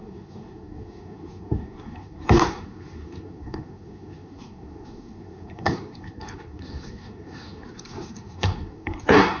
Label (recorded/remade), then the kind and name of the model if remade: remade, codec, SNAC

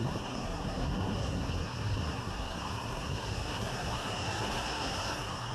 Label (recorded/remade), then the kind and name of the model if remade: remade, codec, SNAC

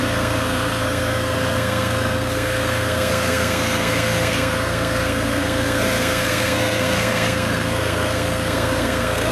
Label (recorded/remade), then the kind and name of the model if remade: remade, codec, SNAC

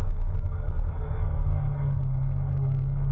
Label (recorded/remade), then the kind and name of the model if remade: remade, codec, SNAC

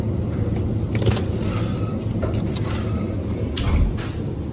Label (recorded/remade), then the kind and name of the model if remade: recorded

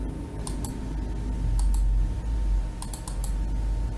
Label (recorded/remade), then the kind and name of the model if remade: recorded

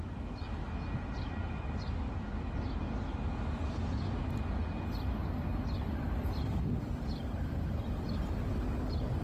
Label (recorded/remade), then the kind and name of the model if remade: recorded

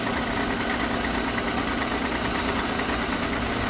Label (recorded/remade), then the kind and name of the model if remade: recorded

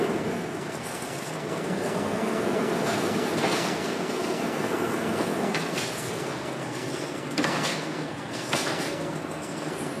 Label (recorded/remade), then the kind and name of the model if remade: remade, codec, SNAC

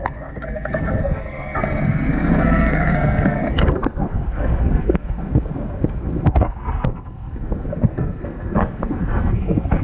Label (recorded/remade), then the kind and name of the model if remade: remade, codec, SNAC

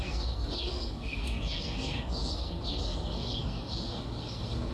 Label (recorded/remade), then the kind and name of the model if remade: remade, codec, SNAC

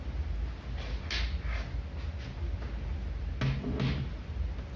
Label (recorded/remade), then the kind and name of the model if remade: recorded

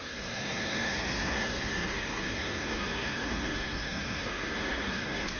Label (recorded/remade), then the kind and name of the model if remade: remade, codec, SNAC